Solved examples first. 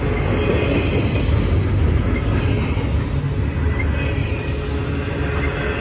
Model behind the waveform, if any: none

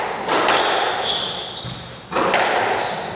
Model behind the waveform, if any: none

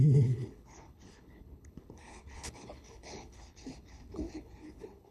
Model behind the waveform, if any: codec, HILCodec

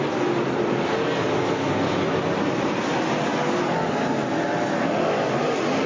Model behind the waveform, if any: none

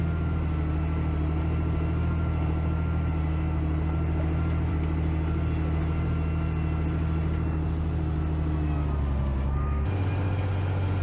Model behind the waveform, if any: none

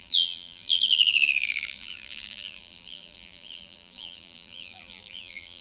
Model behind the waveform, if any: vocoder, BigVGAN v2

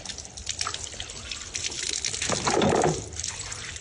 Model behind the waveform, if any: none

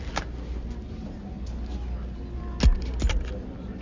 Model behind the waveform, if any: none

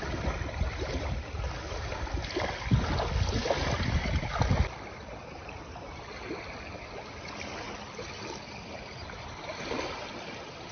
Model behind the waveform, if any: none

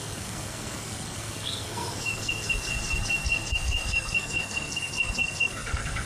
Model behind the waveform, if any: codec, SNAC